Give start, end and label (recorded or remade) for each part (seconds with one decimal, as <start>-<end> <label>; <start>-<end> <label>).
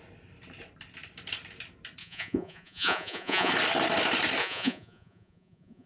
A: 0.0-2.0 recorded; 2.0-3.5 remade; 3.5-4.4 recorded; 4.4-5.9 remade